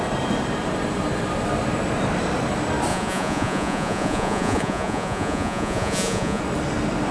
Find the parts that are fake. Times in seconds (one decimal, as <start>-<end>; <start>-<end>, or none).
2.9-6.4